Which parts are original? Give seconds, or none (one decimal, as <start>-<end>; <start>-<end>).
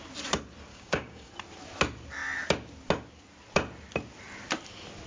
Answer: 0.0-0.7; 1.3-5.1